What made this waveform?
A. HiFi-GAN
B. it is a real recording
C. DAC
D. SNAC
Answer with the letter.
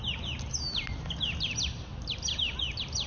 B